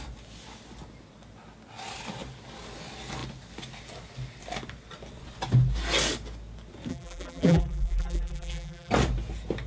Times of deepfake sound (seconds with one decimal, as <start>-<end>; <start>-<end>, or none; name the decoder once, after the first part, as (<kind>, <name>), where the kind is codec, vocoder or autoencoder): 6.9-8.9 (vocoder, BigVGAN v2)